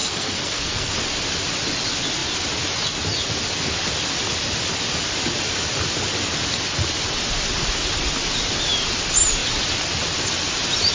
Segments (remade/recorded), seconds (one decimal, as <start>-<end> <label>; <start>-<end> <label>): 0.0-0.9 remade; 0.9-10.9 recorded